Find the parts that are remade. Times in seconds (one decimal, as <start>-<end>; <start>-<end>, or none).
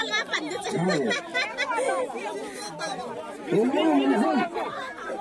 0.6-1.3; 4.4-5.2